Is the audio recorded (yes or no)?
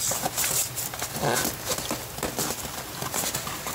yes